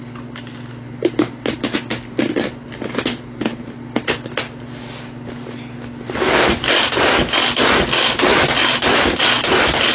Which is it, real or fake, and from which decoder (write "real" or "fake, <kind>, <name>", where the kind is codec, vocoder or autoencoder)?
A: real